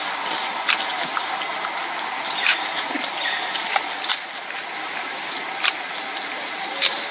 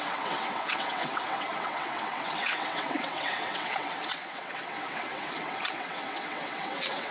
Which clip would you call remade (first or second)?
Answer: second